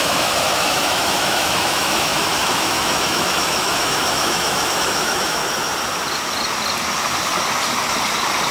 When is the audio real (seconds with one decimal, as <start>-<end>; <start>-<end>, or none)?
5.4-8.5

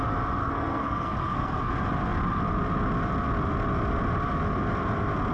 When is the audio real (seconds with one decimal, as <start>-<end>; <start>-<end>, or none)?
0.0-0.4; 1.7-5.3

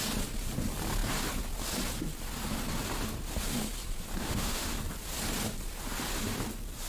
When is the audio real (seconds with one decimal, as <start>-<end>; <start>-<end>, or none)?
0.0-4.2; 4.7-6.9

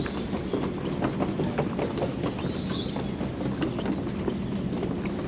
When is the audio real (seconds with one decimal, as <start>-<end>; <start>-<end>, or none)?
0.0-5.3

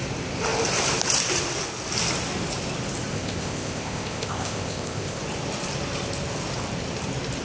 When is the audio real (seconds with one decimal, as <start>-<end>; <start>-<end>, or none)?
0.0-3.1; 5.2-7.4